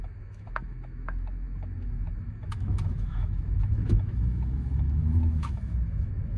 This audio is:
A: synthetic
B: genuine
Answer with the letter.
A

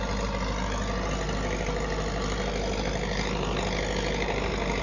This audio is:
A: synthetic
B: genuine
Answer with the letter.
B